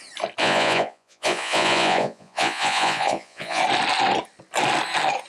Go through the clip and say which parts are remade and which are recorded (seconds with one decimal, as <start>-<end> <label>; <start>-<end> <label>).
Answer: 0.0-0.4 recorded; 0.4-3.6 remade; 3.6-5.3 recorded